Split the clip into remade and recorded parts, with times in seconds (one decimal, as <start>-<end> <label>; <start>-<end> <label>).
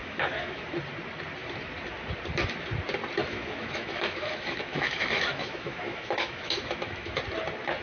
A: 0.0-0.7 remade; 0.7-3.2 recorded; 3.2-7.2 remade; 7.2-7.8 recorded